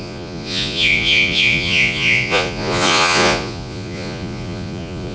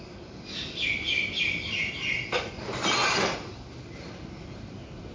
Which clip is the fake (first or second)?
first